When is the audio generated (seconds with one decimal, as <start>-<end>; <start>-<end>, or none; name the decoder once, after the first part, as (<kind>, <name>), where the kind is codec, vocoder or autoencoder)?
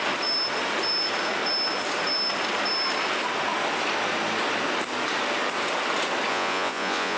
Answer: 6.3-7.2 (vocoder, Vocos)